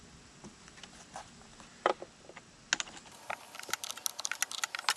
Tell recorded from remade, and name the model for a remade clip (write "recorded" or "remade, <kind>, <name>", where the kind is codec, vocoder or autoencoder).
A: recorded